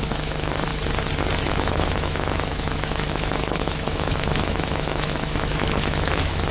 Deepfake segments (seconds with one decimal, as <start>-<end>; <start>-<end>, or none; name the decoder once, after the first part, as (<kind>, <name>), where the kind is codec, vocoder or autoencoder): 0.0-0.7 (autoencoder, DAC-VAE); 1.5-6.5